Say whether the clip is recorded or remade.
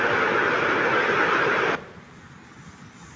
recorded